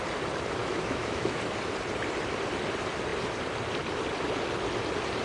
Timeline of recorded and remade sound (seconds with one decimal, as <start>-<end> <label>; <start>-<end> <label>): 0.0-0.6 recorded; 0.6-1.4 remade; 1.4-5.2 recorded